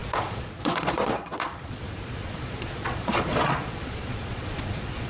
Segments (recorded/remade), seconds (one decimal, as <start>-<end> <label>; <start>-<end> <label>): 0.0-5.1 remade